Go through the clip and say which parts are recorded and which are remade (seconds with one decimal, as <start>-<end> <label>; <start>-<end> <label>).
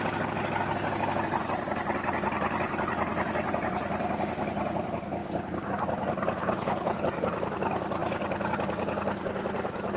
0.0-6.4 recorded; 6.4-7.0 remade; 7.0-10.0 recorded